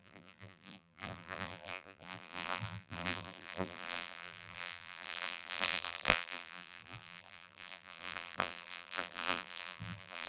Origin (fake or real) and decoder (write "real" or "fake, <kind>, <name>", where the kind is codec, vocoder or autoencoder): fake, vocoder, BigVGAN v2